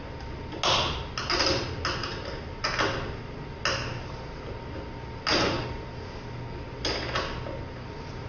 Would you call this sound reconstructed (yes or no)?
no